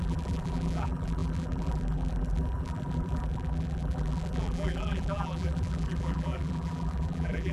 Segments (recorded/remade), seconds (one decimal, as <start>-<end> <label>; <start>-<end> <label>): 0.0-7.5 remade